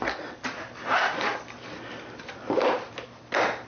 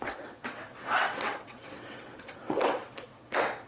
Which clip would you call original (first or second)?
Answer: first